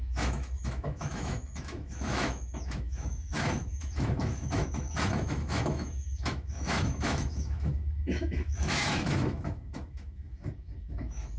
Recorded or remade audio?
remade